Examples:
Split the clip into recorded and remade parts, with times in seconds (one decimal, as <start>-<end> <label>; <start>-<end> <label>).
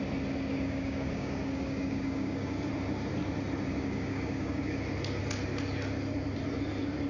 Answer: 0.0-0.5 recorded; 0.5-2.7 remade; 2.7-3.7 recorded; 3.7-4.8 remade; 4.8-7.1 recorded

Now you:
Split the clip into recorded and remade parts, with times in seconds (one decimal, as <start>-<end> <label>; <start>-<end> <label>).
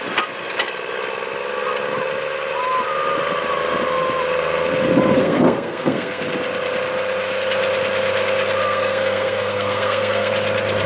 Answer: 0.0-5.2 recorded; 5.2-6.2 remade; 6.2-8.6 recorded; 8.6-10.3 remade; 10.3-10.9 recorded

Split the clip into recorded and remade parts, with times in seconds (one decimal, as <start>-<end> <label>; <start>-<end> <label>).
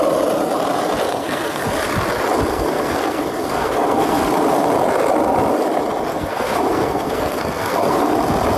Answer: 0.0-1.1 recorded; 1.1-1.6 remade; 1.6-2.5 recorded; 2.5-4.2 remade; 4.2-6.1 recorded; 6.1-8.0 remade; 8.0-8.6 recorded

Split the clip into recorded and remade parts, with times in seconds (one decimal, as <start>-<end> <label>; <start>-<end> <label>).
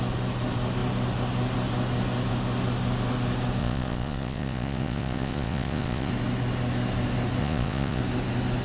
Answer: 0.0-3.6 recorded; 3.6-6.1 remade; 6.1-7.4 recorded; 7.4-8.0 remade; 8.0-8.6 recorded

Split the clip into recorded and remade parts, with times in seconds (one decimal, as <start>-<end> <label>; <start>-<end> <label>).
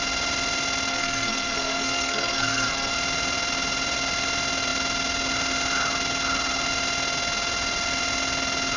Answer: 0.0-0.9 recorded; 0.9-2.9 remade; 2.9-8.8 recorded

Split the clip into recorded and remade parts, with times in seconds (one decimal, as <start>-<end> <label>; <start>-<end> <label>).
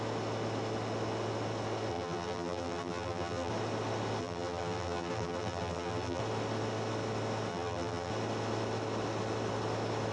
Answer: 0.0-1.9 recorded; 1.9-3.5 remade; 3.5-4.2 recorded; 4.2-6.2 remade; 6.2-7.5 recorded; 7.5-8.1 remade; 8.1-10.1 recorded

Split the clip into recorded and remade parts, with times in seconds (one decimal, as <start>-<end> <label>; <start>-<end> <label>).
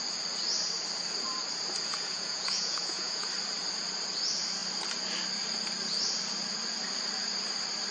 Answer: 0.0-1.9 recorded; 1.9-3.3 remade; 3.3-7.9 recorded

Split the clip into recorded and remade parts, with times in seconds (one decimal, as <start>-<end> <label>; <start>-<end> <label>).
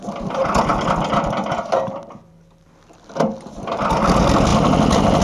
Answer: 0.0-5.2 recorded